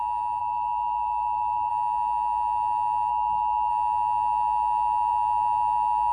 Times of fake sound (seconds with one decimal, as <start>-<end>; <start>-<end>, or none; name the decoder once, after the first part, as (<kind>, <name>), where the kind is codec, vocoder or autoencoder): 0.4-1.7 (autoencoder, DAC-VAE); 3.1-3.7